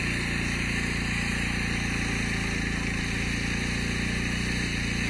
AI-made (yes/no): no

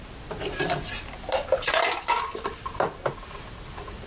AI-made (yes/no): no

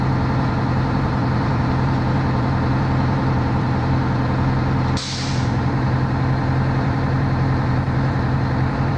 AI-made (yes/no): yes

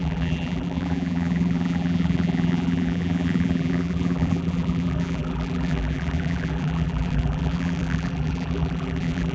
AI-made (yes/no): yes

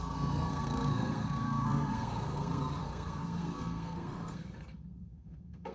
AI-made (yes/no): yes